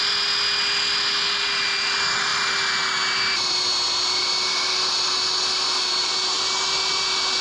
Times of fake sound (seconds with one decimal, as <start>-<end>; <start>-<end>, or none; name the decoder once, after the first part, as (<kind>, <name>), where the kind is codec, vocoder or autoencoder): none